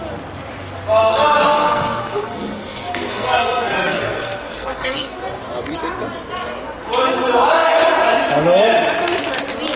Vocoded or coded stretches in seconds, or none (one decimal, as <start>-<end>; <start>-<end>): 1.0-5.2